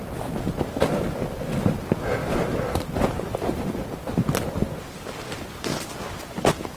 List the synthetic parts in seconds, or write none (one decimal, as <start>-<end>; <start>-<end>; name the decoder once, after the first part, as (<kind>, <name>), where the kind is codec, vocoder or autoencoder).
2.2-3.6 (vocoder, BigVGAN v2)